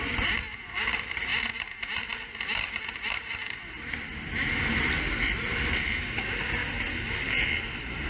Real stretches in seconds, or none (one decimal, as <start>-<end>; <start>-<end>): 6.6-7.2